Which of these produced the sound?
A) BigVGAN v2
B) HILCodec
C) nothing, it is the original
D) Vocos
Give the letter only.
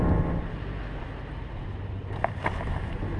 C